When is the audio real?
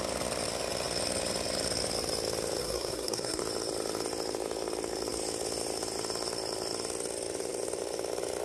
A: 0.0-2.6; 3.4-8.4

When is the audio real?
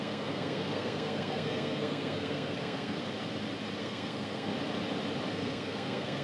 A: 3.0-3.8; 4.5-5.3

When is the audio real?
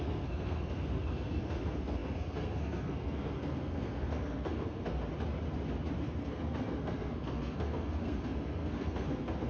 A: 5.0-6.2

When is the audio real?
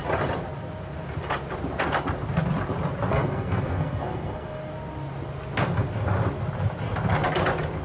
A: 0.0-3.1; 4.7-7.8